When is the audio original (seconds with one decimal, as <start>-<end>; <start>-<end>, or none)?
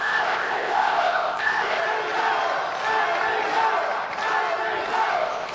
1.8-5.1